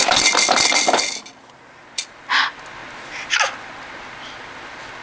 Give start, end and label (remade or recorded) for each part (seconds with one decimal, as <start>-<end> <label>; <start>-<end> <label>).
0.0-5.0 recorded